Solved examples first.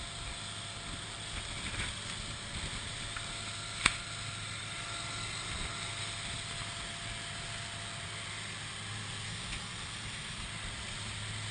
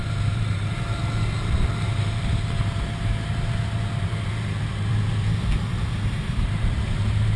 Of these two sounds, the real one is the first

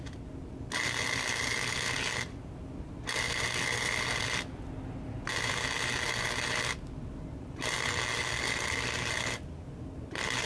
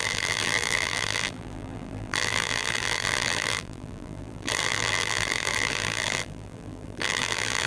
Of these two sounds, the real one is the first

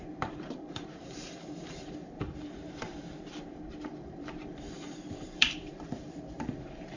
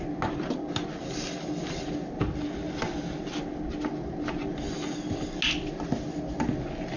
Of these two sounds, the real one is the second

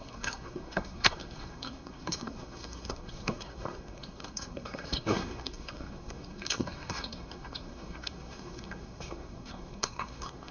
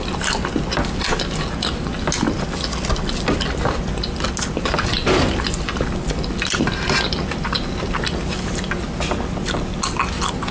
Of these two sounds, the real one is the second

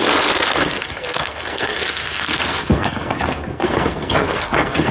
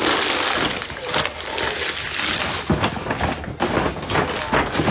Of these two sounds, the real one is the second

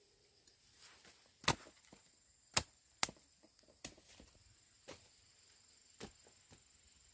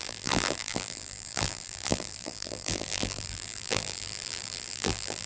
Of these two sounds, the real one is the first